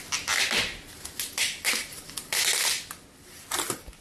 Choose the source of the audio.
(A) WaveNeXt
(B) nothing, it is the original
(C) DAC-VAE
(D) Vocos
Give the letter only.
B